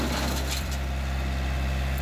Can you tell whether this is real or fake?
fake